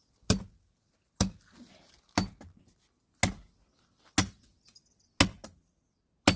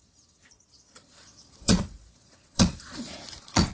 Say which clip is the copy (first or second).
second